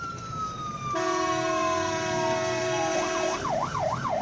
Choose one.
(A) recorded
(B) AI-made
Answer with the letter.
B